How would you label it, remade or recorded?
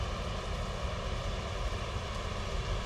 recorded